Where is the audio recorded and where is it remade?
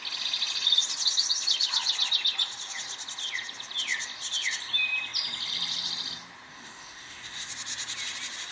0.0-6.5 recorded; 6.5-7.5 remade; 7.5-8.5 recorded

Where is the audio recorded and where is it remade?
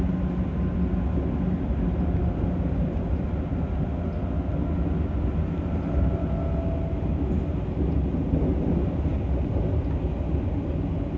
0.0-11.2 recorded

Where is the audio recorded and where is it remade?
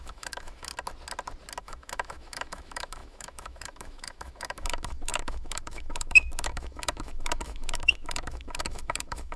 0.0-0.7 remade; 0.7-1.6 recorded; 1.6-9.4 remade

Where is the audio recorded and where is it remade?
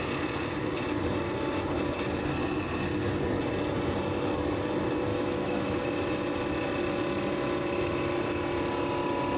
0.0-5.1 recorded; 5.1-5.8 remade; 5.8-9.4 recorded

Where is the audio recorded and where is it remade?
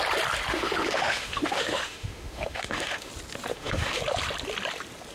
0.0-0.5 recorded; 0.5-3.1 remade; 3.1-3.5 recorded; 3.5-4.0 remade; 4.0-5.1 recorded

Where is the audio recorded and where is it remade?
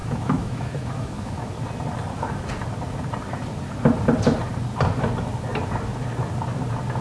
0.0-1.5 remade; 1.5-7.0 recorded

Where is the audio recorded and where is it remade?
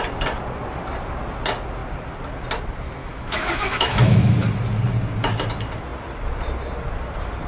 0.0-3.0 recorded; 3.0-4.3 remade; 4.3-7.5 recorded